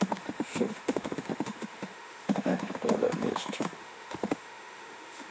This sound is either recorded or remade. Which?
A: remade